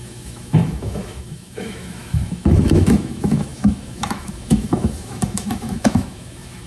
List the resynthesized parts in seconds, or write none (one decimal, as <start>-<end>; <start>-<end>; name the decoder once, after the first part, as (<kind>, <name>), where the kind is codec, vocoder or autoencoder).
0.0-6.7 (autoencoder, DAC-VAE)